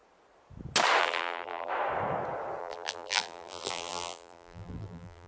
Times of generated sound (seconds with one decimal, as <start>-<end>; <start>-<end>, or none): 1.0-1.7; 2.6-5.3